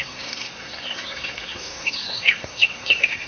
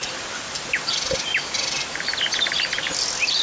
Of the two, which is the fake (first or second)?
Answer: first